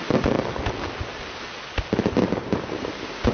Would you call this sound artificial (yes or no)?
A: no